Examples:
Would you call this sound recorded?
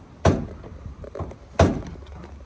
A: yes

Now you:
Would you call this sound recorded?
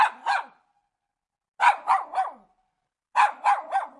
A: yes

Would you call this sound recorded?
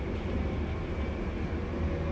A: yes